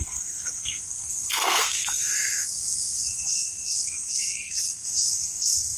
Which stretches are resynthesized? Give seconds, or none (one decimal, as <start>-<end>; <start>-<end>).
0.0-5.8